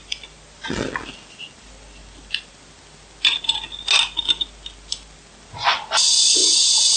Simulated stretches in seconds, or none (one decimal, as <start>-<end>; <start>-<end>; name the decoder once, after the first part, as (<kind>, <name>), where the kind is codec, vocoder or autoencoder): none